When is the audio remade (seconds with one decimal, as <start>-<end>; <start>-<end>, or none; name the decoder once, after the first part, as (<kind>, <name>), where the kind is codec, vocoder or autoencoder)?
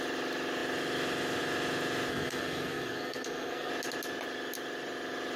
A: 2.1-3.7 (codec, SNAC)